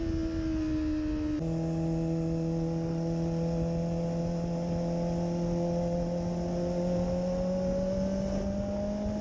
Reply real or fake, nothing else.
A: real